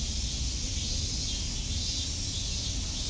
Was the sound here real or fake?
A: real